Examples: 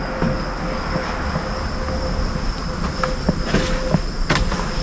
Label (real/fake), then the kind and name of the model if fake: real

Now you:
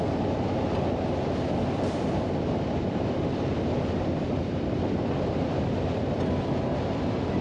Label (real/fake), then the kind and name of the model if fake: fake, vocoder, BigVGAN v2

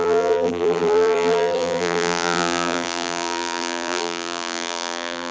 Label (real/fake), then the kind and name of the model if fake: fake, vocoder, BigVGAN v2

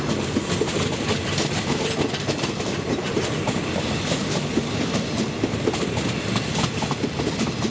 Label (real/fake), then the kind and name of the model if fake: real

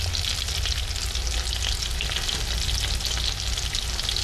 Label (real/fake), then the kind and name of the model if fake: real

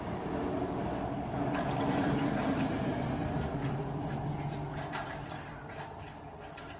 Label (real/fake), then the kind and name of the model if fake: fake, vocoder, BigVGAN v2